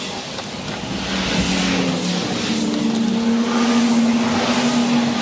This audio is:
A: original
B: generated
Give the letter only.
A